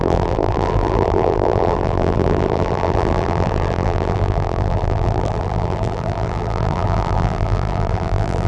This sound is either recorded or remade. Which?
remade